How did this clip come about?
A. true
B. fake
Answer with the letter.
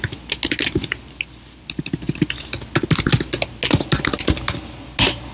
A